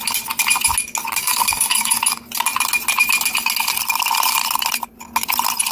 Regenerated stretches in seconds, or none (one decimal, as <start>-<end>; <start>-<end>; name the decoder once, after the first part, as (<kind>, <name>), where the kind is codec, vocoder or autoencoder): 1.2-2.0 (codec, SNAC)